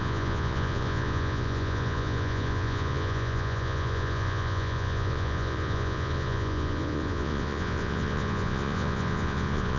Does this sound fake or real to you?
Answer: fake